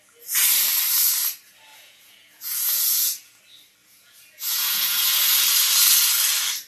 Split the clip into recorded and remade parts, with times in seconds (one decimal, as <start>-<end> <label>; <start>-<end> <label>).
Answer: 0.0-1.7 recorded; 1.7-3.4 remade; 3.4-3.8 recorded; 3.8-5.4 remade; 5.4-6.7 recorded

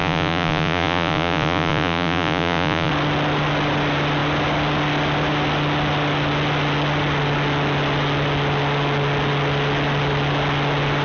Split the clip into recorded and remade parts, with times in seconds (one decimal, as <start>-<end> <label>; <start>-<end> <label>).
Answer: 0.0-2.9 remade; 2.9-11.0 recorded

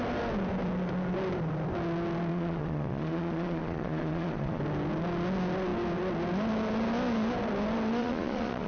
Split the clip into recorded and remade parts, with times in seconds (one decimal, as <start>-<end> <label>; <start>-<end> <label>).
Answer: 0.0-2.3 recorded; 2.3-4.6 remade; 4.6-8.0 recorded; 8.0-8.7 remade

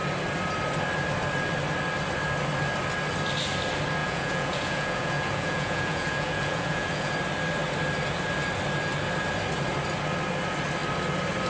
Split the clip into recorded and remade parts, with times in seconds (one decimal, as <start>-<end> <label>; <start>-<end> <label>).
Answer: 0.0-4.0 recorded; 4.0-7.1 remade; 7.1-11.5 recorded

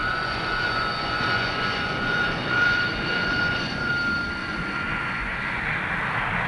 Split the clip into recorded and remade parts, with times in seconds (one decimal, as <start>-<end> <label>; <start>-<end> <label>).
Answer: 0.0-3.9 remade; 3.9-4.4 recorded; 4.4-5.6 remade; 5.6-6.5 recorded

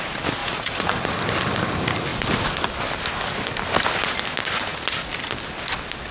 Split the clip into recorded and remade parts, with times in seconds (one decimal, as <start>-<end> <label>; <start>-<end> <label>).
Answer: 0.0-0.4 recorded; 0.4-1.1 remade; 1.1-6.1 recorded